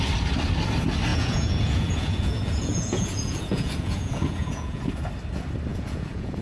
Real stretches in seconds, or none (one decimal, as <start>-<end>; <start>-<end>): 0.0-1.1; 4.9-5.7